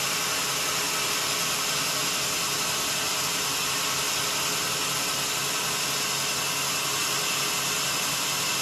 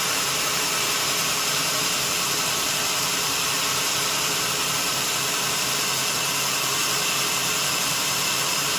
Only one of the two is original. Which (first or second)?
first